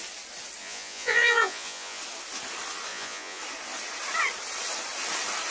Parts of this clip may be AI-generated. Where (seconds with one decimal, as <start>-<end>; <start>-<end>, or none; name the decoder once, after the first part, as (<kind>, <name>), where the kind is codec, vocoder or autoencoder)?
0.6-2.0 (vocoder, Vocos); 2.9-3.4